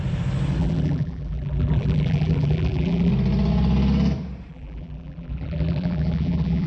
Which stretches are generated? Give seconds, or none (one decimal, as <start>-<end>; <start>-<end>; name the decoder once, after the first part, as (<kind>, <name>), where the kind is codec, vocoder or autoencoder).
0.6-3.1 (vocoder, BigVGAN v2); 4.5-6.7